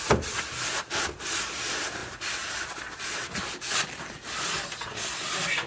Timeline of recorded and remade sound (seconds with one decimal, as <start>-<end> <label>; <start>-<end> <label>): 0.0-5.7 recorded